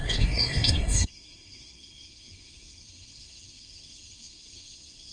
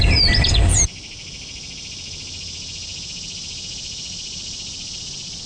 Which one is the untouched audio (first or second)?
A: second